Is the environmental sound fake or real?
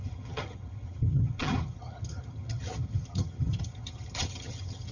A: fake